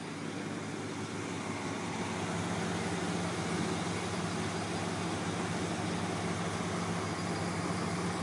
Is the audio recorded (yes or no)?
yes